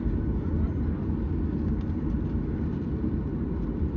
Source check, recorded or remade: recorded